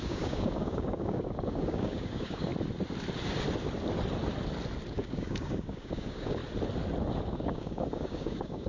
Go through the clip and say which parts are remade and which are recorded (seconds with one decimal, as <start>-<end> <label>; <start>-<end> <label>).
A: 0.0-2.5 remade; 2.5-4.9 recorded; 4.9-6.4 remade; 6.4-7.2 recorded; 7.2-8.7 remade